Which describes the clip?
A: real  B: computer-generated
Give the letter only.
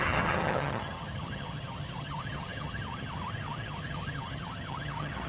B